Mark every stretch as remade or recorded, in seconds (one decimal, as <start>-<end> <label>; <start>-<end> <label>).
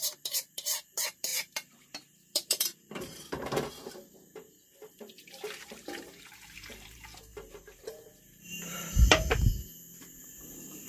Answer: 0.0-9.5 remade; 9.5-10.2 recorded; 10.2-10.9 remade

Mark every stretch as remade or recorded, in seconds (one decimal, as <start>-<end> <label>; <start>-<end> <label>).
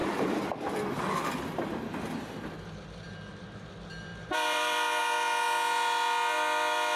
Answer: 0.0-3.6 remade; 3.6-4.1 recorded; 4.1-5.0 remade; 5.0-7.0 recorded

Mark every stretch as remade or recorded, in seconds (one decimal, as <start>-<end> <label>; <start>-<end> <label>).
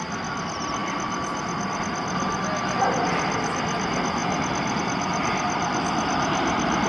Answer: 0.0-0.8 recorded; 0.8-1.8 remade; 1.8-6.9 recorded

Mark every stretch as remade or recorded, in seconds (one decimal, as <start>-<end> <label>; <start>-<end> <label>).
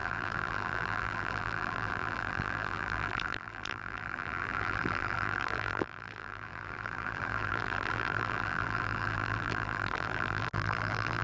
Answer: 0.0-11.2 remade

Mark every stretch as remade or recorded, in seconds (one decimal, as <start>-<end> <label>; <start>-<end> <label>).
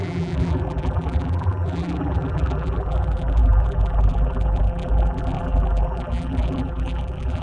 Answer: 0.0-7.4 remade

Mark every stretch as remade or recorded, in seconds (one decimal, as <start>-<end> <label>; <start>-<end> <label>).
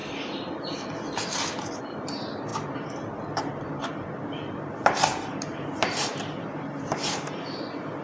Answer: 0.0-1.8 recorded; 1.8-8.0 remade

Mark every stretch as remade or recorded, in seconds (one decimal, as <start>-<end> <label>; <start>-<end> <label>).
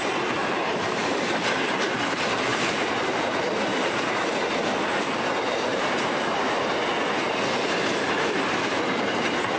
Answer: 0.0-0.4 recorded; 0.4-2.0 remade; 2.0-2.5 recorded; 2.5-3.3 remade; 3.3-5.7 recorded; 5.7-6.4 remade; 6.4-9.6 recorded